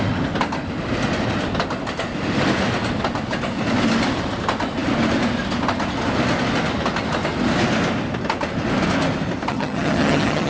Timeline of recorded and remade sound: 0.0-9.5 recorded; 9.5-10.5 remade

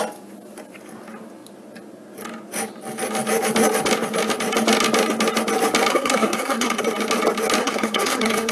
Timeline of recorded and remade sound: 0.0-5.9 recorded; 5.9-6.8 remade; 6.8-7.6 recorded; 7.6-8.5 remade